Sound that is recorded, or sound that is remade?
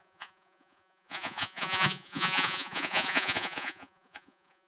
remade